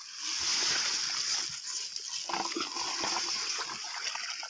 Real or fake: real